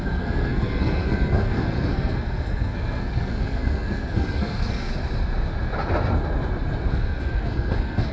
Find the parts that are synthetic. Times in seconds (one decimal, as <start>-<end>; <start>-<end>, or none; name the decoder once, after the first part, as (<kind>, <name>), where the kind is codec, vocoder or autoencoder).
0.0-4.9 (codec, SNAC); 6.9-8.1